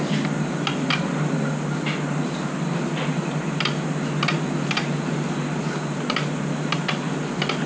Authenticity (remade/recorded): recorded